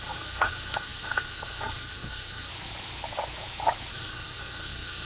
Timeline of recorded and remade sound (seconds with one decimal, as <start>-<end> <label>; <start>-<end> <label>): 0.0-2.5 remade; 2.5-3.9 recorded; 3.9-5.0 remade